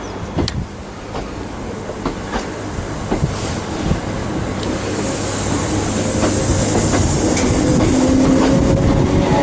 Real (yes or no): yes